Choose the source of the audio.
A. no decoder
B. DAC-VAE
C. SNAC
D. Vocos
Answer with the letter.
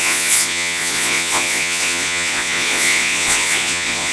D